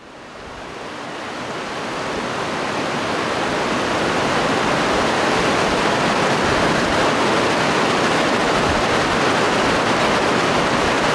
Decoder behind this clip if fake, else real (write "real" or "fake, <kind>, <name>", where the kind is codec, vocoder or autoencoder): real